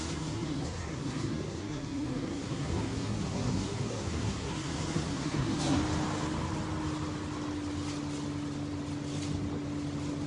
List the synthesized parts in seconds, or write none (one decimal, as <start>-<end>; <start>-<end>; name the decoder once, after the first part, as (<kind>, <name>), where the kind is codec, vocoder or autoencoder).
0.0-5.8 (codec, SNAC)